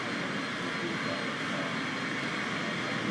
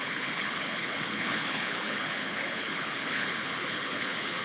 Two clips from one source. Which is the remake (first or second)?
second